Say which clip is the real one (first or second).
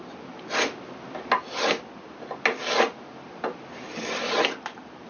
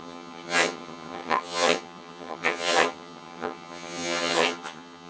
first